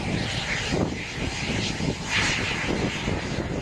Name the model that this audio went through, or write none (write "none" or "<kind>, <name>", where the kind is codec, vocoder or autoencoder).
none